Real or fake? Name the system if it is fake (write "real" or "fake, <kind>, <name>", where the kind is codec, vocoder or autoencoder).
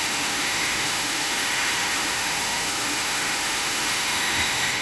fake, autoencoder, DAC-VAE